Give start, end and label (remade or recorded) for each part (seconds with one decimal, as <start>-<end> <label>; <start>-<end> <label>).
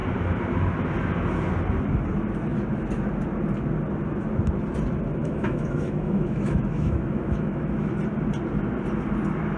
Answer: 0.0-5.2 recorded; 5.2-7.9 remade; 7.9-9.6 recorded